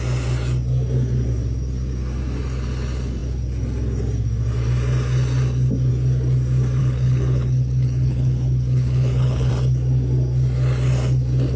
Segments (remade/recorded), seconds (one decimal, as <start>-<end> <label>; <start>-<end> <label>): 0.0-6.8 recorded; 6.8-9.5 remade; 9.5-11.6 recorded